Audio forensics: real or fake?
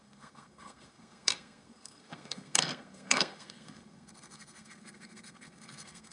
fake